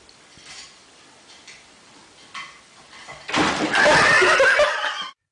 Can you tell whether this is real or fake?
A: real